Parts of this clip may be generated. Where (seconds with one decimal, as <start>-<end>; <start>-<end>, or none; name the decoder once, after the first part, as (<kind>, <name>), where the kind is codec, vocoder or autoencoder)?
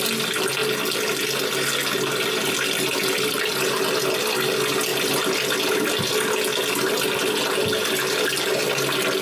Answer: none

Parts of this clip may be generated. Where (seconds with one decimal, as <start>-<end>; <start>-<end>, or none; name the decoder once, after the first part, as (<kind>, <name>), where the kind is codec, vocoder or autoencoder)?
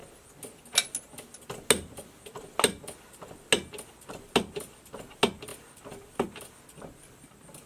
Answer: 5.5-6.4 (vocoder, BigVGAN v2)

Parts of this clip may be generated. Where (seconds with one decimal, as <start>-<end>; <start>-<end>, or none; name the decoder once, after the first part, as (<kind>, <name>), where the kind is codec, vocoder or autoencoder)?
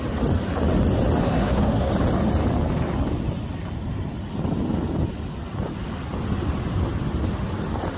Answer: 1.2-1.9 (codec, SNAC)